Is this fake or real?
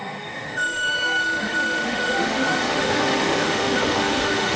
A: fake